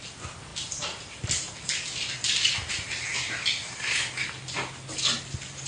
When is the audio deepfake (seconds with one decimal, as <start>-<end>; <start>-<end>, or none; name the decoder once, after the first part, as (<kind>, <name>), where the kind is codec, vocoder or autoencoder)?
none